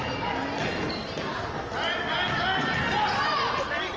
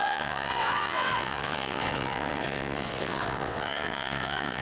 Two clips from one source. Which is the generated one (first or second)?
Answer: second